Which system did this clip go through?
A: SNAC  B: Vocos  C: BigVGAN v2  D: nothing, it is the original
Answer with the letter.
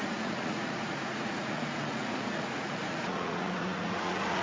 B